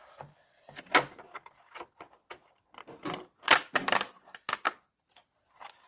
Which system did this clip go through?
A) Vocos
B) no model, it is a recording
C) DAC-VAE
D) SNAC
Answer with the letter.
B